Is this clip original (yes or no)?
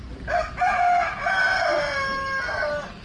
yes